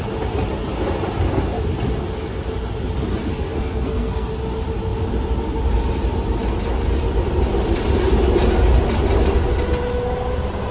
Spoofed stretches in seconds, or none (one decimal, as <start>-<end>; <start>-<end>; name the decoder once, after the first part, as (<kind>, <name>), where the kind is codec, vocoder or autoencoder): 3.3-4.3 (codec, SNAC)